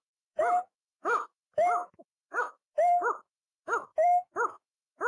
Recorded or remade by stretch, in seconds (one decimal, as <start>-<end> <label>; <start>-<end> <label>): 0.0-5.1 remade